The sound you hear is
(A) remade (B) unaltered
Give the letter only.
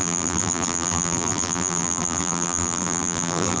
A